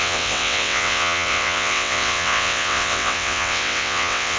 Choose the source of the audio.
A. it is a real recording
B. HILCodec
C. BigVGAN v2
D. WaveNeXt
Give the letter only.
D